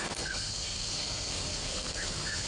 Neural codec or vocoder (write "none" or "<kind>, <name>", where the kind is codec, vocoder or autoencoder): codec, SNAC